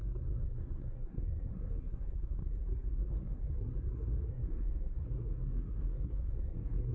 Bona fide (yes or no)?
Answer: no